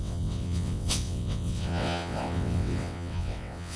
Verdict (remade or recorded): remade